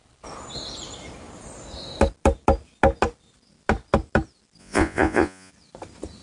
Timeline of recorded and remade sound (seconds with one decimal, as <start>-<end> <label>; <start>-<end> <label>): 0.0-4.6 recorded; 4.6-5.5 remade; 5.5-6.2 recorded